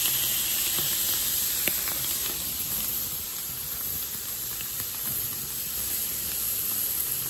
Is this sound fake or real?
real